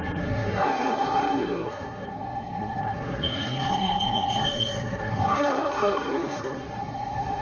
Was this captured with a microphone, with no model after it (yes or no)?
no